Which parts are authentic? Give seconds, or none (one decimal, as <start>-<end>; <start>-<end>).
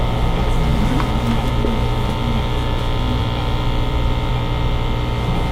0.0-5.5